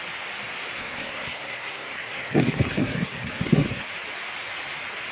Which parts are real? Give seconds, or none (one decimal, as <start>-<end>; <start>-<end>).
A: 0.0-0.8; 3.9-5.1